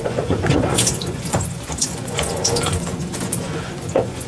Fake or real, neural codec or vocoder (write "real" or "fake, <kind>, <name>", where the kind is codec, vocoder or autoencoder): fake, vocoder, Vocos